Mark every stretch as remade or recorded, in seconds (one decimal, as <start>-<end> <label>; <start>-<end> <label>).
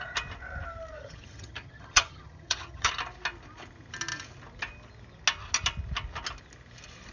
0.0-1.0 recorded; 1.0-2.9 remade; 2.9-7.1 recorded